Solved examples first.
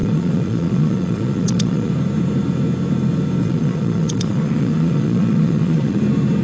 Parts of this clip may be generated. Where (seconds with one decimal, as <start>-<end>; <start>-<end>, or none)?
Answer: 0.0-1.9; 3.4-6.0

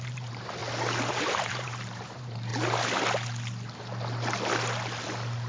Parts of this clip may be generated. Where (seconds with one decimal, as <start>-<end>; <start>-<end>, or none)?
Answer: 0.0-0.6; 1.1-2.5

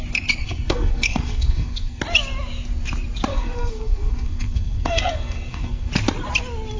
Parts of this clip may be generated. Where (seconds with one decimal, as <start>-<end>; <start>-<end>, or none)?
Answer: 0.4-2.0; 3.3-5.9

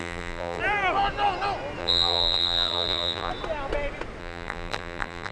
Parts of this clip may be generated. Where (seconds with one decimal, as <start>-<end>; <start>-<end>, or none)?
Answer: 0.0-0.6; 1.8-3.3; 4.2-5.3